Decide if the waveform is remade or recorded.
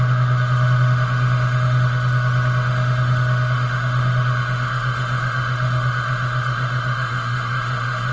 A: remade